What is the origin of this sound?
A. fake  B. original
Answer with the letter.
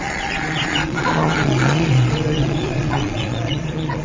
A